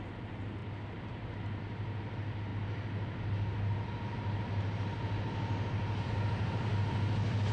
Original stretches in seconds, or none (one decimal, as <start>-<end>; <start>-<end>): 0.0-7.5